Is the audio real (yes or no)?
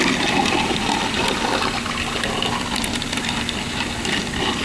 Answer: yes